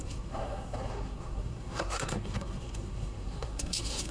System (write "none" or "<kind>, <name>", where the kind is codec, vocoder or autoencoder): codec, SNAC